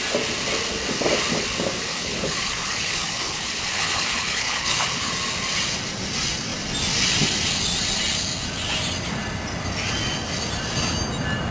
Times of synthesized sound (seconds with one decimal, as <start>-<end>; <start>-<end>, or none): 1.9-5.1